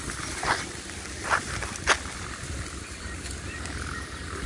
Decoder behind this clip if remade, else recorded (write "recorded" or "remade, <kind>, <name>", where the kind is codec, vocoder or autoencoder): recorded